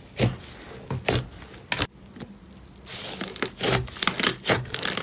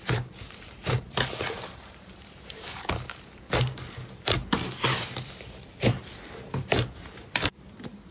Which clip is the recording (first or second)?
first